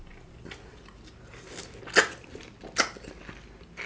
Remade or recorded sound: recorded